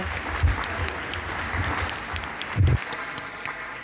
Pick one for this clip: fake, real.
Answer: real